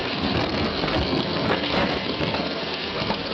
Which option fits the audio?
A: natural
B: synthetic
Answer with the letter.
B